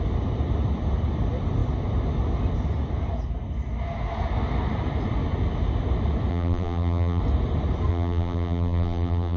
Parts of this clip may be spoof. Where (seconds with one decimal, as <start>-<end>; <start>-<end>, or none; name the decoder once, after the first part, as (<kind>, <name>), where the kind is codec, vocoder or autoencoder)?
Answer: 6.3-7.2 (vocoder, BigVGAN v2); 7.9-9.4